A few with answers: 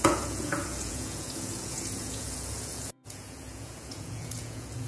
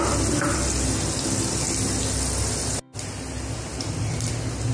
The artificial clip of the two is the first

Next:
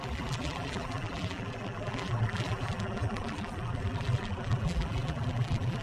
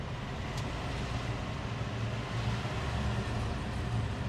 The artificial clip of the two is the first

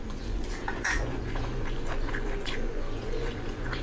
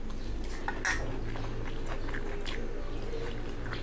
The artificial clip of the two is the first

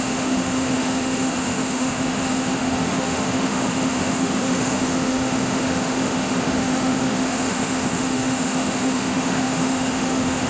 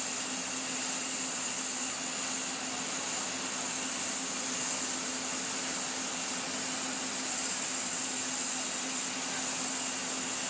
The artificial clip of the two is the first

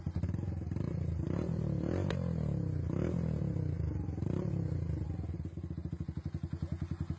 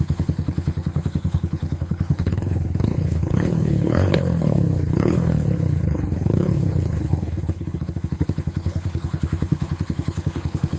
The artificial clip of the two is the second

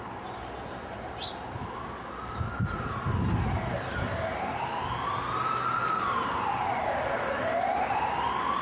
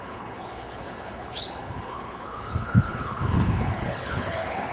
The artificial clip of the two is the second